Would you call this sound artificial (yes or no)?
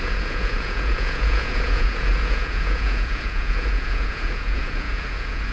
yes